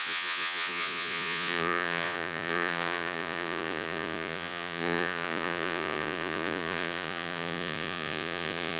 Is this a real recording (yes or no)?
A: no